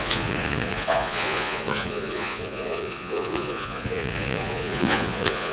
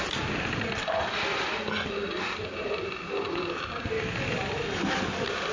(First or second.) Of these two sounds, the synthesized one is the first